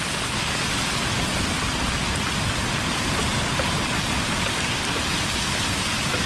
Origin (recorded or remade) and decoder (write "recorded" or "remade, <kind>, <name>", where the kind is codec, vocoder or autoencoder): recorded